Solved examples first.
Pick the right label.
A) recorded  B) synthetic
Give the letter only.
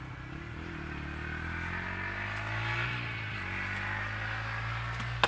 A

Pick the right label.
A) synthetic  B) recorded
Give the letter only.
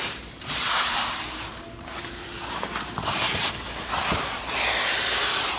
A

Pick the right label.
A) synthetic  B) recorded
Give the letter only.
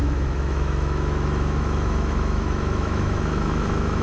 A